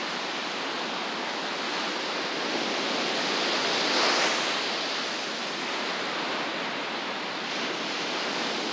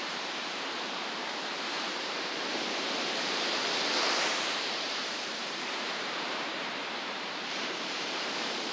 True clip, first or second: first